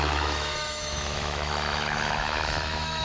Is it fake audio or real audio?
fake